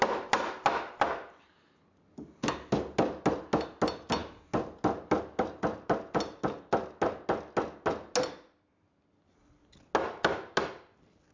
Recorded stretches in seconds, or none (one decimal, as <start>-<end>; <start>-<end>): 0.0-11.3